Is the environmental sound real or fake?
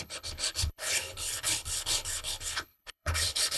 fake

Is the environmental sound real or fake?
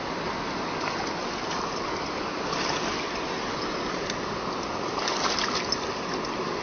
real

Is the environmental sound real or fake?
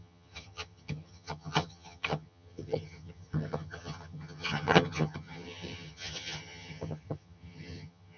fake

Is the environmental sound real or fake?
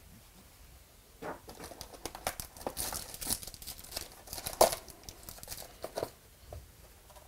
real